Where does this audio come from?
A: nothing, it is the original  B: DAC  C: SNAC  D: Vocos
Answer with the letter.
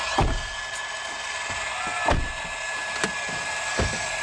A